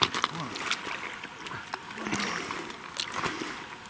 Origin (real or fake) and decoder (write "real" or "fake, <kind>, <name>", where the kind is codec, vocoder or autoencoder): real